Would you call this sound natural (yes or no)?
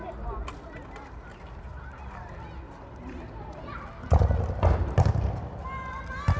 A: yes